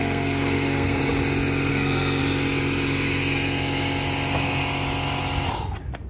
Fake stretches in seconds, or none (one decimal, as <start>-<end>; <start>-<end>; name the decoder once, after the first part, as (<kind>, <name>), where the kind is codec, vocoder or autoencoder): 0.0-1.0 (codec, SNAC); 1.7-2.2